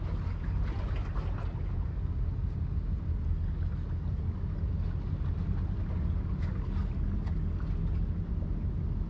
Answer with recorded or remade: recorded